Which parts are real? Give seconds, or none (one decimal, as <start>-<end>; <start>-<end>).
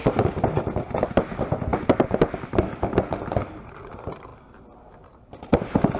0.0-6.0